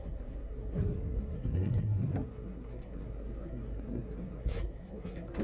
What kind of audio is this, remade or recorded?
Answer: remade